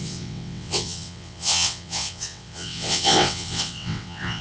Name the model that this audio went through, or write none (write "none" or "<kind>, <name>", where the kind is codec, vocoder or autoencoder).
vocoder, WaveNeXt